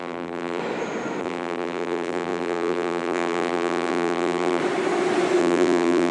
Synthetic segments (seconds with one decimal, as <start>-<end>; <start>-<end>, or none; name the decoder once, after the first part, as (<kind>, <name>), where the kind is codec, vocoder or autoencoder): 0.0-0.6 (vocoder, BigVGAN v2); 1.2-4.6; 5.4-6.1